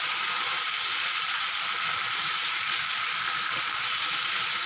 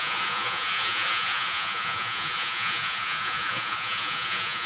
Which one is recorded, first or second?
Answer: first